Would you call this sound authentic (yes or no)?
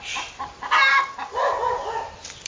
yes